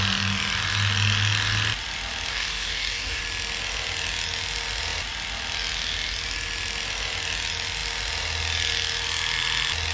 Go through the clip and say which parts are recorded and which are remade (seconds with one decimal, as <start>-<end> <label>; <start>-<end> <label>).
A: 0.0-2.3 recorded; 2.3-3.2 remade; 3.2-9.9 recorded